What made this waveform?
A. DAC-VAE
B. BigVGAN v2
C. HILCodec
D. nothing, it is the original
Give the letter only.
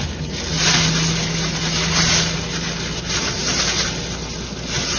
D